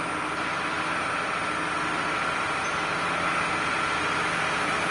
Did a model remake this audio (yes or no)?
no